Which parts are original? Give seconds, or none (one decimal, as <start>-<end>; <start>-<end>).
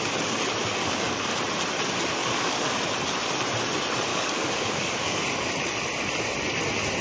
0.0-0.8; 1.3-2.2; 2.7-4.1; 5.2-7.0